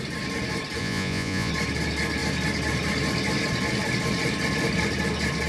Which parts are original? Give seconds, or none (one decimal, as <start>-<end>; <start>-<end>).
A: 0.0-0.8; 1.5-5.5